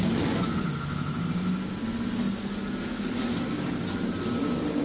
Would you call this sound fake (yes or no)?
no